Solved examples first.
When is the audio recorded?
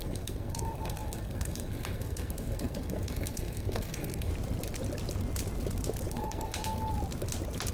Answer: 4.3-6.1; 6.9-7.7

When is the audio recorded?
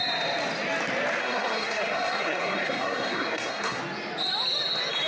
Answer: 0.0-1.2; 3.8-5.1